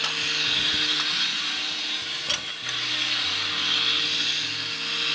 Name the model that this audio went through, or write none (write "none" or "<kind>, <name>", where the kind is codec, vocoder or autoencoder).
none